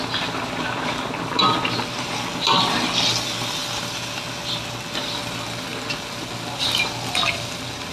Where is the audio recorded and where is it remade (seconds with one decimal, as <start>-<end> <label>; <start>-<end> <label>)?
0.0-7.9 recorded